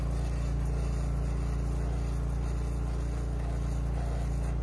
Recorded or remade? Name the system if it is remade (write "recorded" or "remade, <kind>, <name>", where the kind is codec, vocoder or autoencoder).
recorded